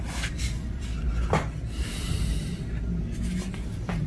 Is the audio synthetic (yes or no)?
no